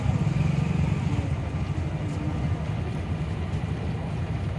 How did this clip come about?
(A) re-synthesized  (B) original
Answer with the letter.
B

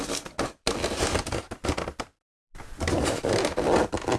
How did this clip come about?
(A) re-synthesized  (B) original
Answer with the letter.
A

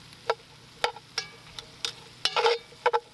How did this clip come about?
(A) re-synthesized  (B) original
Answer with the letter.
B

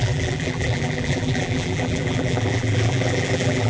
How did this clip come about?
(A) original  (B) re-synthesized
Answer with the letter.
B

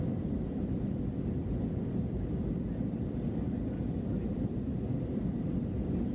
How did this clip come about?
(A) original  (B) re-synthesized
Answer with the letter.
B